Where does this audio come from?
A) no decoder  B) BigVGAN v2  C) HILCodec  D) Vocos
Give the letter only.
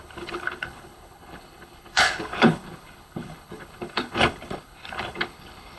C